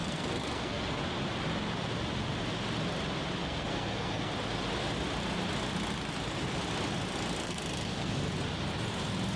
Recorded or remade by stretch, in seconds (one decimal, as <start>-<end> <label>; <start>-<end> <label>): 0.0-1.0 remade; 1.0-3.4 recorded; 3.4-4.3 remade; 4.3-7.4 recorded; 7.4-8.1 remade; 8.1-9.4 recorded